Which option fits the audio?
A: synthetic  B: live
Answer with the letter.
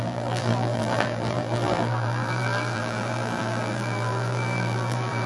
A